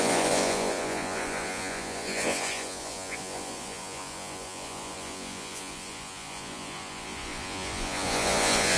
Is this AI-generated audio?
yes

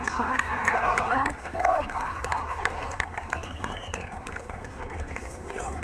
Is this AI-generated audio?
yes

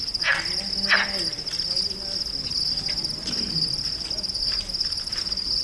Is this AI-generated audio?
no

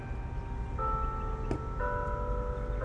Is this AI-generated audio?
no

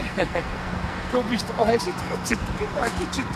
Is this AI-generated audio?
yes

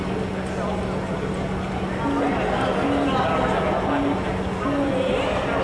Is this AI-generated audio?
no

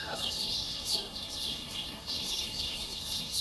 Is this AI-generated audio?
yes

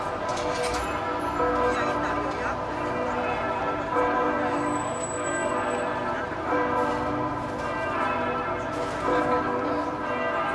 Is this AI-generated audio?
yes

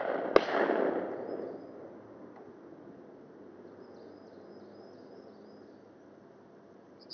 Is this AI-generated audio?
no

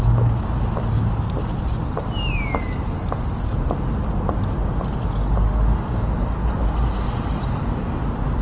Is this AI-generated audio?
no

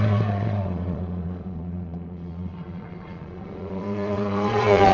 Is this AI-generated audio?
yes